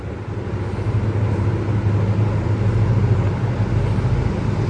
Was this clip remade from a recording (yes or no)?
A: no